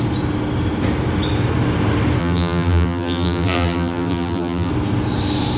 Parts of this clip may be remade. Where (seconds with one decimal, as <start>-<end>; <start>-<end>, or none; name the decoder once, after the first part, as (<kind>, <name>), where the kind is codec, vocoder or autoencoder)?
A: 2.2-4.7 (vocoder, BigVGAN v2)